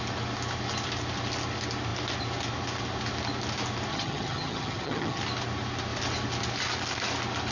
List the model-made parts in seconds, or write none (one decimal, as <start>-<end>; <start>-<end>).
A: 3.9-5.2